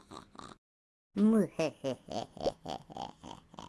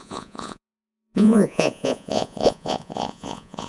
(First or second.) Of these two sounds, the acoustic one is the first